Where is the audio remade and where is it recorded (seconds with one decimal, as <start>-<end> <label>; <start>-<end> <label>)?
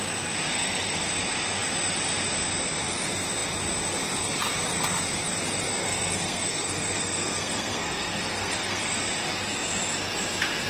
0.0-0.5 recorded; 0.5-1.1 remade; 1.1-5.8 recorded; 5.8-9.0 remade; 9.0-10.7 recorded